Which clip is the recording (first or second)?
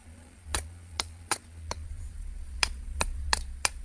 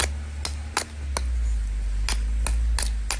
second